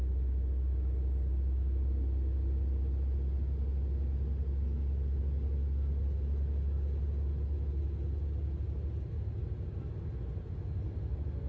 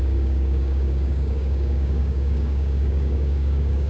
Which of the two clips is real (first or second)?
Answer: first